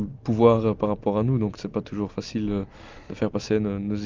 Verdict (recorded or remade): recorded